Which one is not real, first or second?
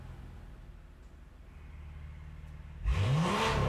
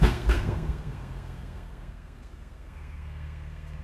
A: second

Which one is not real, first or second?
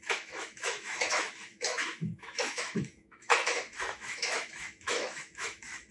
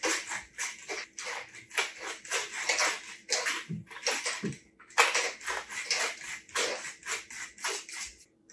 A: first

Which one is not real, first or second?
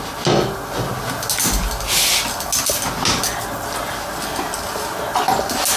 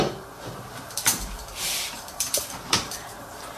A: second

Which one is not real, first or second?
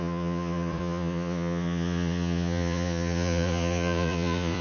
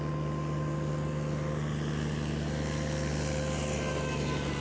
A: first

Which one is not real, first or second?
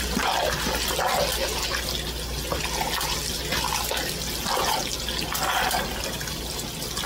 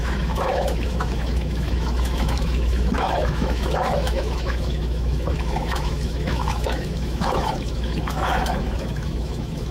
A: second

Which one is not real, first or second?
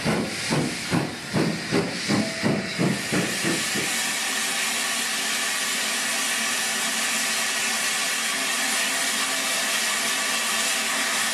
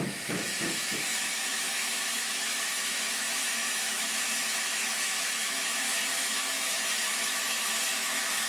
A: second